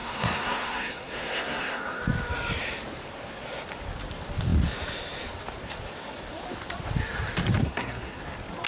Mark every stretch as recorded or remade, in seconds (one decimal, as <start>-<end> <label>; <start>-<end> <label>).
0.0-2.0 remade; 2.0-7.6 recorded; 7.6-8.2 remade; 8.2-8.7 recorded